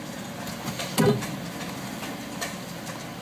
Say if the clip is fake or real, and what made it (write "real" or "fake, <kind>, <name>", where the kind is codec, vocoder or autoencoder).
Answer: real